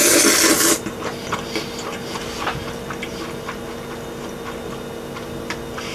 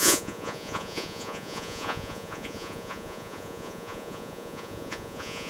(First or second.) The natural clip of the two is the first